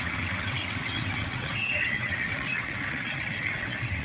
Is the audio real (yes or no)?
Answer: no